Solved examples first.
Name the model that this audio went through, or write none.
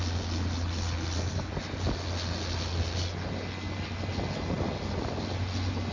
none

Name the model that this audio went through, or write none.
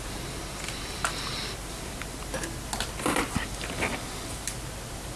none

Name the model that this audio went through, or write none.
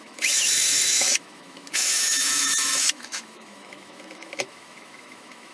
autoencoder, DAC-VAE